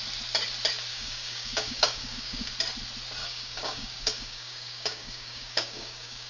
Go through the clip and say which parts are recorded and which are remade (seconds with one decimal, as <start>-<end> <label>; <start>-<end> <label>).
0.0-0.9 recorded; 0.9-2.5 remade; 2.5-3.2 recorded; 3.2-6.3 remade